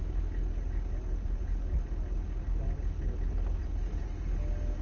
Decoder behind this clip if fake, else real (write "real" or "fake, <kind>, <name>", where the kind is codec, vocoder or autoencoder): real